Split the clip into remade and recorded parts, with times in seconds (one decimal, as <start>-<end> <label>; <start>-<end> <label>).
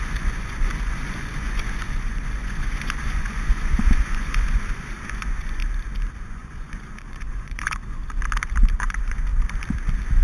0.0-5.6 remade; 5.6-6.2 recorded; 6.2-8.0 remade; 8.0-8.8 recorded; 8.8-9.3 remade; 9.3-10.2 recorded